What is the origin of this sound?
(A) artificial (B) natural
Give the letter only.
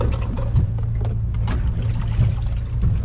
B